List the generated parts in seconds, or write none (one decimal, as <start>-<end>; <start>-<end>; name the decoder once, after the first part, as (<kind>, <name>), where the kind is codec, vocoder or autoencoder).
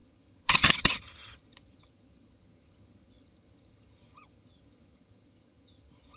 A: 0.0-6.2 (vocoder, HiFi-GAN)